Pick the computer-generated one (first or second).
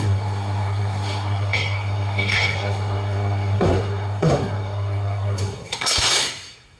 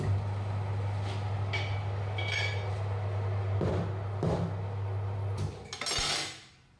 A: first